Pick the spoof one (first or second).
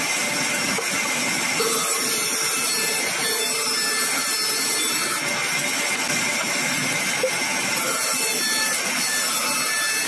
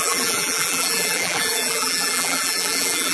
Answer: second